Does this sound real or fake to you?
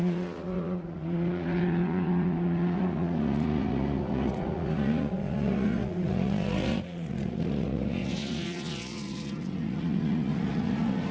fake